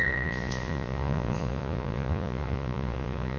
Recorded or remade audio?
remade